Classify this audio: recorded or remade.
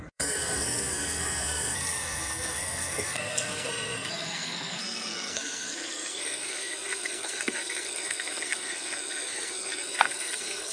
remade